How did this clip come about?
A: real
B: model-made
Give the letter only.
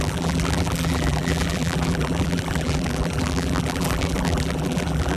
B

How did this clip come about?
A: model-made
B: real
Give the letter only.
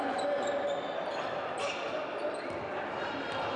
A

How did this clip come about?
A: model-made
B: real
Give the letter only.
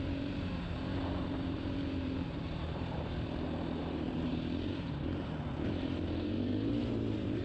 A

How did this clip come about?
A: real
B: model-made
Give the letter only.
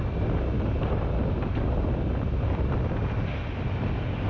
A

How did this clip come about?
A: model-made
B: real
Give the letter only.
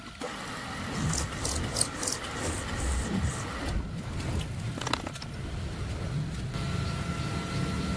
B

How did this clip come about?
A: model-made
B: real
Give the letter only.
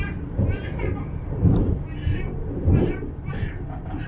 A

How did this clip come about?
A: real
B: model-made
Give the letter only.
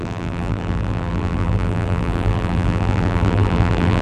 B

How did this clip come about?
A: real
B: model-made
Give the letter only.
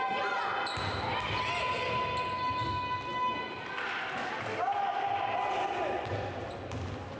A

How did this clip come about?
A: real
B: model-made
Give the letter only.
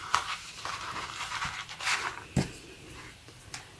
B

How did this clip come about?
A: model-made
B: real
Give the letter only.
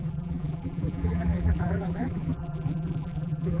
A